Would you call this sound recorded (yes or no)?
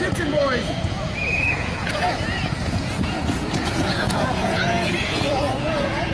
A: no